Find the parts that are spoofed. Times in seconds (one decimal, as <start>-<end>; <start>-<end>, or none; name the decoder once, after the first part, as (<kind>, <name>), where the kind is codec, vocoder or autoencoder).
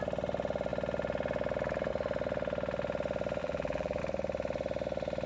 3.4-4.0 (vocoder, BigVGAN v2)